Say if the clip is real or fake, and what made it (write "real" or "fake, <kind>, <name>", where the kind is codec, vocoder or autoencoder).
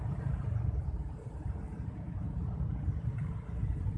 fake, vocoder, BigVGAN v2